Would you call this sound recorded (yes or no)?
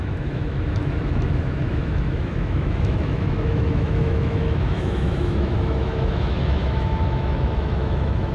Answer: no